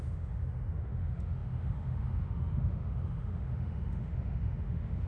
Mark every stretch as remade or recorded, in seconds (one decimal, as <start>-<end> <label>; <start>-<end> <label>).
0.0-5.1 remade